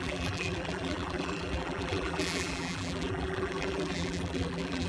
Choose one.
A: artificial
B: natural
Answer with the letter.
A